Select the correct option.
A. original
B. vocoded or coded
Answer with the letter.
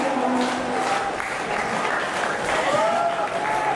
A